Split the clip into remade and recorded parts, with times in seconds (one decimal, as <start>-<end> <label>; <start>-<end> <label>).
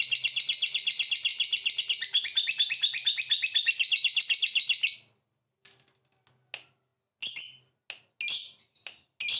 0.0-9.4 recorded